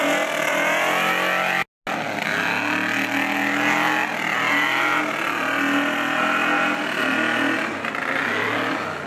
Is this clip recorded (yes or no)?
yes